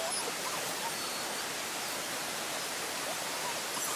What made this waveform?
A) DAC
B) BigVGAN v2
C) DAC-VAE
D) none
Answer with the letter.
D